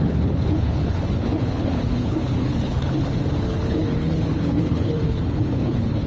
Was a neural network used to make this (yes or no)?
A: yes